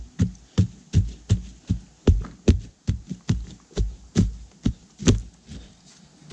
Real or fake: real